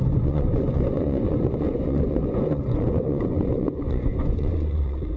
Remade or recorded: remade